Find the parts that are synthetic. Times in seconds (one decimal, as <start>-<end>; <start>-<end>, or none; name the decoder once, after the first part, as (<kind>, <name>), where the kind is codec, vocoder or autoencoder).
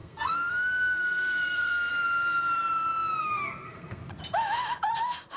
0.0-1.9 (codec, SNAC); 3.2-4.0